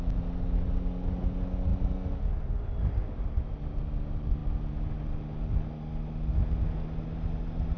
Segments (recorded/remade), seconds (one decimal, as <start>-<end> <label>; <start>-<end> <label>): 0.0-7.8 recorded